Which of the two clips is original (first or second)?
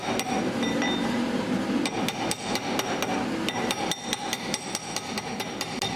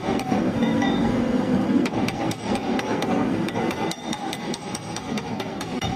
first